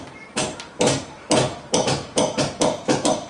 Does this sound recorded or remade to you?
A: remade